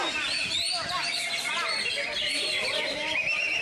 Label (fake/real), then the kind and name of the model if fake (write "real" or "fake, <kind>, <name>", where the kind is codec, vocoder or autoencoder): real